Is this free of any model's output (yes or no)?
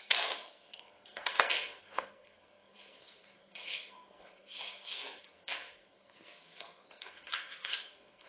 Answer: no